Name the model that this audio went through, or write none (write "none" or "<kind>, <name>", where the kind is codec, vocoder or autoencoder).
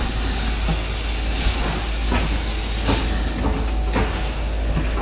none